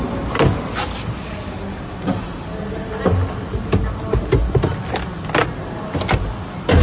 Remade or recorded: recorded